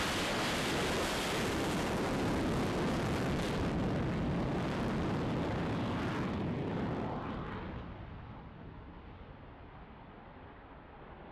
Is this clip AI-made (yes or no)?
no